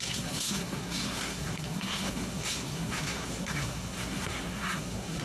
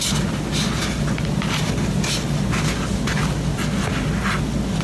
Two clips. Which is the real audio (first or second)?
second